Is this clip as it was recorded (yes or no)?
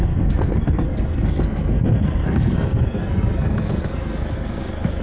no